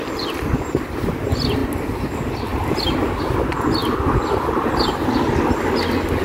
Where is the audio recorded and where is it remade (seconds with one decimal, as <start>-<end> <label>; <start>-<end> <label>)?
0.0-1.0 remade; 1.0-1.6 recorded; 1.6-2.1 remade; 2.1-3.8 recorded; 3.8-4.9 remade; 4.9-6.2 recorded